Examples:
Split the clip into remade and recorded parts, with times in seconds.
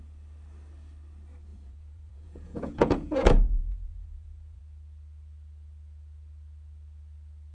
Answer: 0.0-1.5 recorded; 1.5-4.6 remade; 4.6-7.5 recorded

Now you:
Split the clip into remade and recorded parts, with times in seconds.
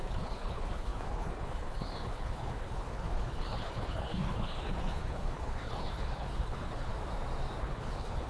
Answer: 0.0-6.9 remade; 6.9-7.6 recorded; 7.6-8.3 remade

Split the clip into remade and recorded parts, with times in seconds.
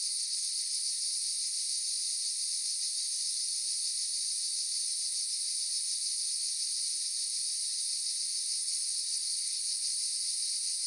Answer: 0.0-0.8 remade; 0.8-8.6 recorded; 8.6-9.6 remade; 9.6-10.9 recorded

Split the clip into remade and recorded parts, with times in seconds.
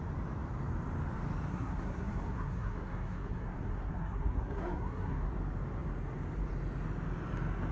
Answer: 0.0-1.5 recorded; 1.5-5.3 remade; 5.3-7.7 recorded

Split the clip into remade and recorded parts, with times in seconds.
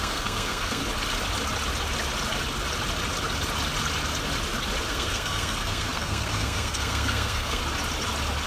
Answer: 0.0-0.8 remade; 0.8-4.9 recorded; 4.9-7.6 remade; 7.6-8.5 recorded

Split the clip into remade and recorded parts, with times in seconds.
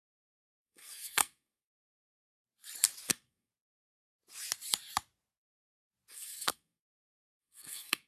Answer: 0.0-2.4 remade; 2.4-3.1 recorded; 3.1-3.5 remade; 3.5-6.1 recorded; 6.1-8.1 remade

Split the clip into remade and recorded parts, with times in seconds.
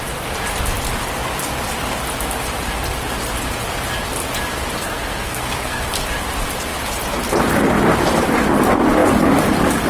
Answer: 0.0-4.8 recorded; 4.8-5.9 remade; 5.9-9.9 recorded